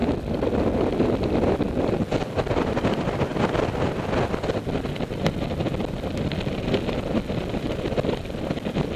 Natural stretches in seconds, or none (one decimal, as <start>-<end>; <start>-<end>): 0.0-9.0